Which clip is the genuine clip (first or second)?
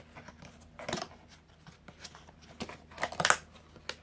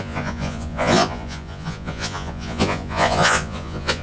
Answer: first